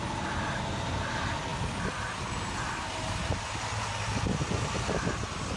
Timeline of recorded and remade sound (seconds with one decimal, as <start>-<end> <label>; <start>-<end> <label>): 0.0-5.6 recorded